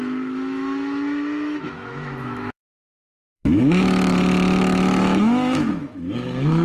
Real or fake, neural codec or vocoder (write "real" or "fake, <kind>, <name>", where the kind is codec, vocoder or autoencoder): fake, autoencoder, DAC-VAE